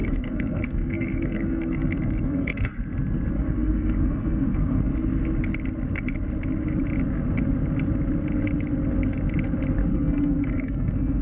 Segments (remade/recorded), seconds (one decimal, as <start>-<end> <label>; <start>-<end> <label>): 0.0-2.7 remade; 2.7-3.3 recorded; 3.3-4.9 remade; 4.9-9.9 recorded; 9.9-11.2 remade